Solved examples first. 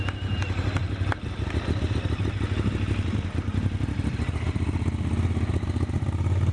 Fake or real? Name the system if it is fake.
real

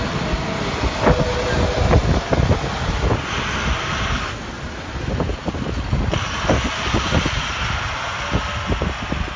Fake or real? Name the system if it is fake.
real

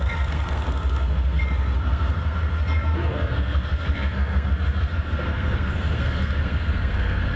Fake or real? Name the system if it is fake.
fake, codec, SNAC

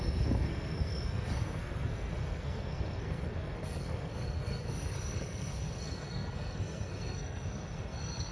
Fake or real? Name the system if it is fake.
fake, codec, SNAC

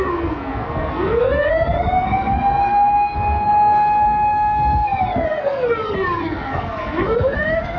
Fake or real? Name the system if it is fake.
fake, codec, SNAC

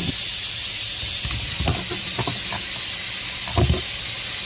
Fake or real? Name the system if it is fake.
real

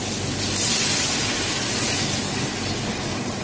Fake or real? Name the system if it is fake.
real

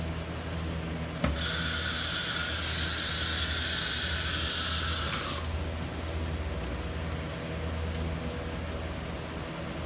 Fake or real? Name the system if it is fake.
real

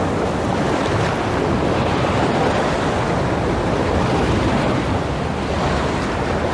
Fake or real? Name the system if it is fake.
real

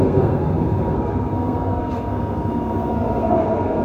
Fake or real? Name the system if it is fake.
fake, codec, SNAC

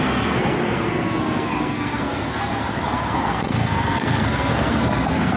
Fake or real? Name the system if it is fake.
fake, codec, SNAC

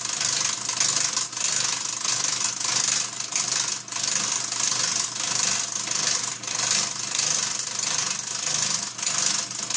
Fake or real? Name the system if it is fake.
real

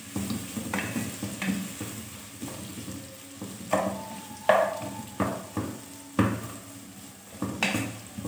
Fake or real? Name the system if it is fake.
real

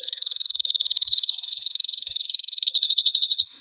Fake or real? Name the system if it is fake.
fake, codec, SNAC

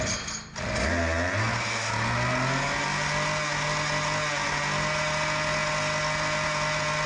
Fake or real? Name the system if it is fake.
real